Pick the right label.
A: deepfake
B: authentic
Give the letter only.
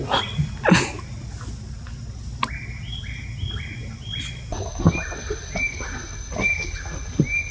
B